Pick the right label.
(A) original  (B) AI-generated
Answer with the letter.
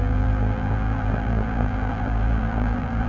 B